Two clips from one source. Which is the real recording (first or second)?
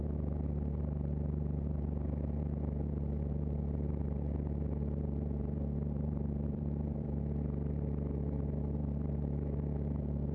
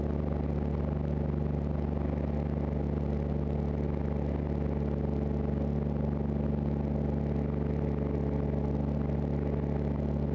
second